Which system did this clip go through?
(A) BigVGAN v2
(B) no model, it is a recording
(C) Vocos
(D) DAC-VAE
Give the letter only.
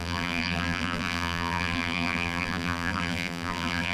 A